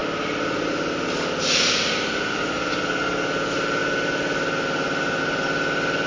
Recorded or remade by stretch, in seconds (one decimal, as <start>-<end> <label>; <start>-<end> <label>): 0.0-6.1 recorded